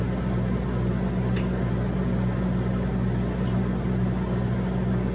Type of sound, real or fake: real